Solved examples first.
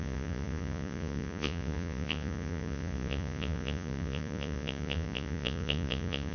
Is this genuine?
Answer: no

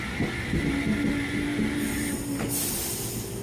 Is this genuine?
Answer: yes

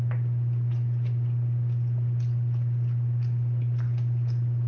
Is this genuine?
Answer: yes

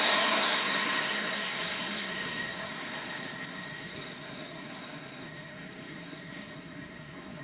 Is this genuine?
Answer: no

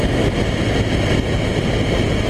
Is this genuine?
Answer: yes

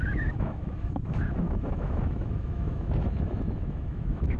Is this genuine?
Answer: no